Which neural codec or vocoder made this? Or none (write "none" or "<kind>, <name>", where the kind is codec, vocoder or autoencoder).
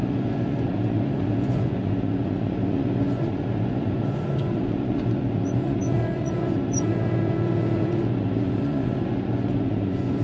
vocoder, Vocos